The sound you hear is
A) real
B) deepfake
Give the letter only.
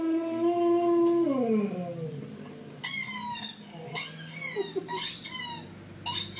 A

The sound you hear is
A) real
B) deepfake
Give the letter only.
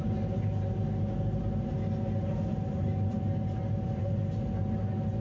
A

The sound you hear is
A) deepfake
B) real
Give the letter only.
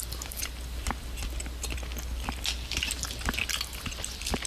B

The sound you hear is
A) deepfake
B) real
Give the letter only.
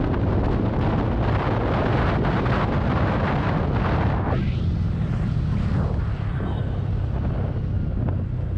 B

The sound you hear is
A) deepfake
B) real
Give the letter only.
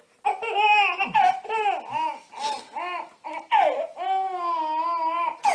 B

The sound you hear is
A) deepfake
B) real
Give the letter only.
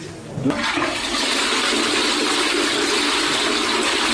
B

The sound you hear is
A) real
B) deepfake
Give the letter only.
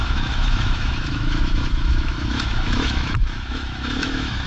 B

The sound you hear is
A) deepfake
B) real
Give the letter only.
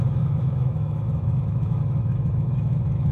A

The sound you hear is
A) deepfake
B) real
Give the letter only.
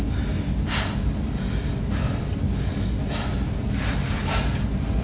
B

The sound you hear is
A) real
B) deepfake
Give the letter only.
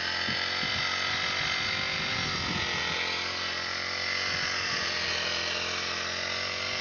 A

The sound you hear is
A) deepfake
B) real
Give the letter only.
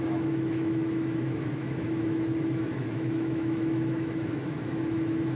A